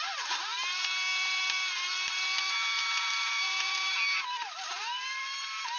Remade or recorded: remade